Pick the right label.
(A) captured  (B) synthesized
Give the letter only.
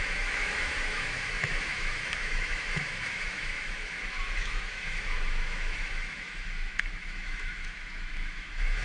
B